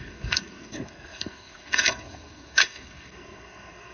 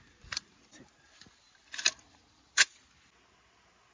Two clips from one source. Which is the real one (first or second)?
second